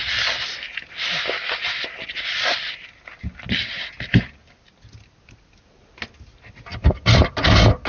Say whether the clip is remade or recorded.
recorded